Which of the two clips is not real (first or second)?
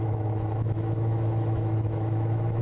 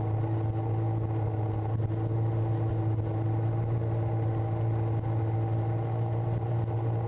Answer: first